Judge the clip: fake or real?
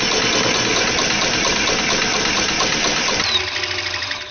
real